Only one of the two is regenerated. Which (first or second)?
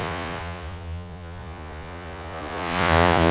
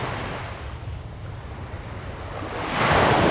first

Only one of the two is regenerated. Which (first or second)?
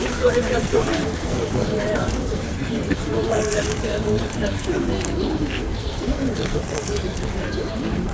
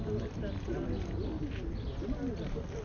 first